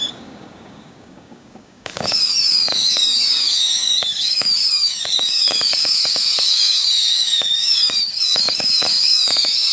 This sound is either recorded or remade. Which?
remade